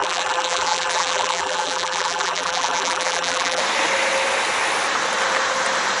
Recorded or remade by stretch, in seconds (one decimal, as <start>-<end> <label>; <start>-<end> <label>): 0.0-3.6 remade; 3.6-6.0 recorded